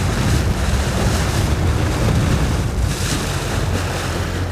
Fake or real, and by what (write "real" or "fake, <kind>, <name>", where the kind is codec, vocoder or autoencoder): real